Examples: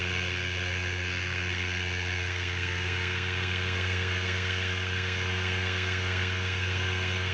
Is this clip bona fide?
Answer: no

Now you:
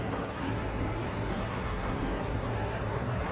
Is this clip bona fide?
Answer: no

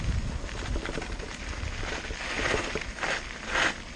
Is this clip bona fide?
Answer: yes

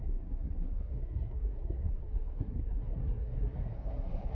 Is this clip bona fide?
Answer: no